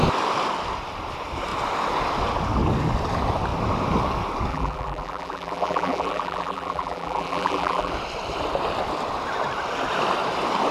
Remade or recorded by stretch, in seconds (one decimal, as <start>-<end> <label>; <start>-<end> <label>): 0.0-4.5 recorded; 4.5-7.9 remade; 7.9-10.7 recorded